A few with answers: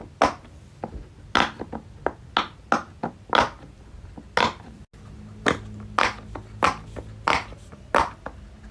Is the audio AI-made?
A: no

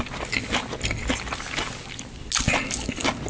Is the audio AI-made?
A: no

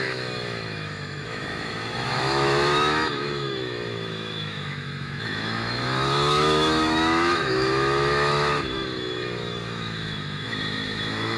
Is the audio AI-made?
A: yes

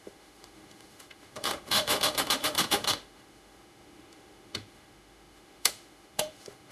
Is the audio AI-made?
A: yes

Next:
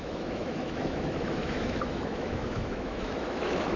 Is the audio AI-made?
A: yes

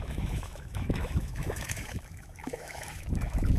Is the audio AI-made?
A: yes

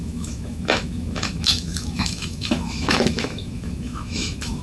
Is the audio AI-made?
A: yes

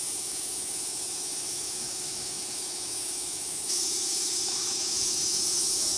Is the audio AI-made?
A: yes